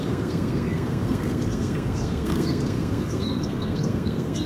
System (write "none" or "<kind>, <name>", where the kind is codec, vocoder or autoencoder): codec, SNAC